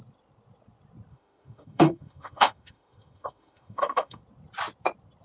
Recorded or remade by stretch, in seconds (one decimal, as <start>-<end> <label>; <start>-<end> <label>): 0.0-1.1 recorded; 1.1-4.2 remade; 4.2-5.2 recorded